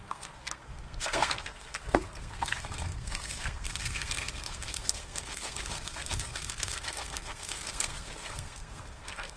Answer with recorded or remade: remade